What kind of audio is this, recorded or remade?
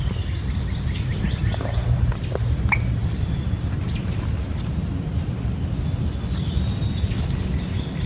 recorded